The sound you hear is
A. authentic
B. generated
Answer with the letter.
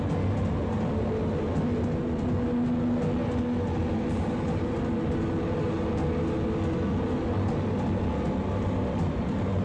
A